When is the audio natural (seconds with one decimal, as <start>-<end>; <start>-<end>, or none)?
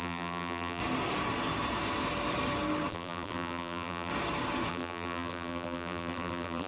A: 0.8-2.9; 4.1-4.7